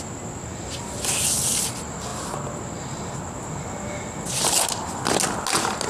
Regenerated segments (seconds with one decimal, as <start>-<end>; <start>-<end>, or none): 0.5-1.0